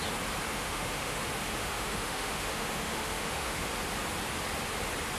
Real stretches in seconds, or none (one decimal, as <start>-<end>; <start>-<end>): 0.0-0.5; 1.2-1.6; 3.7-5.2